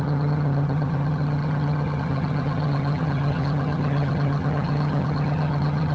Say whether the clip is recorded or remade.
remade